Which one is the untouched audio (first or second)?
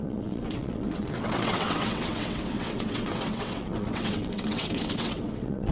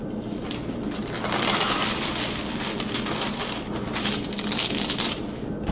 second